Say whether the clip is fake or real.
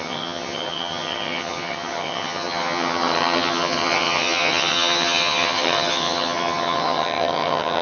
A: fake